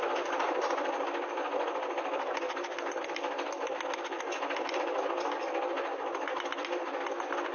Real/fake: real